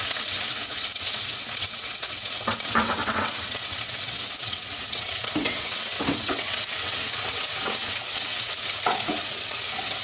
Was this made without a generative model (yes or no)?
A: no